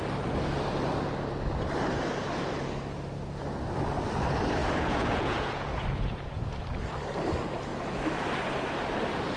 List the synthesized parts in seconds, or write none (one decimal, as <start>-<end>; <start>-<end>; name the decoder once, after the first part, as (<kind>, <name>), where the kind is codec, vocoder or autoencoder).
4.6-6.4 (vocoder, Vocos)